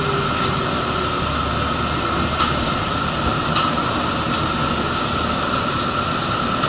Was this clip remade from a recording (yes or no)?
no